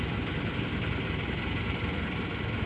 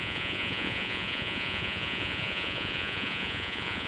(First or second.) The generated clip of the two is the second